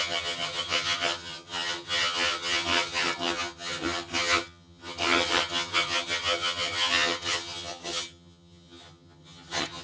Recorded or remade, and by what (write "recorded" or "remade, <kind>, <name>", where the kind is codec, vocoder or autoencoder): remade, vocoder, HiFi-GAN